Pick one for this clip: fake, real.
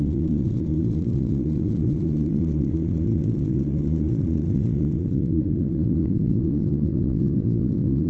fake